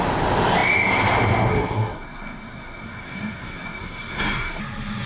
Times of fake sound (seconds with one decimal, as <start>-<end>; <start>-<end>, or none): 1.5-4.6